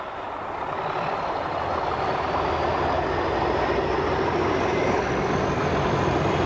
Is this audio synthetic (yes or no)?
no